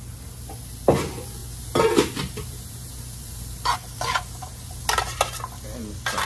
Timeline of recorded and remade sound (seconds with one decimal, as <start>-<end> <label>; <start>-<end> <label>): 0.0-1.4 recorded; 1.4-4.8 remade; 4.8-6.3 recorded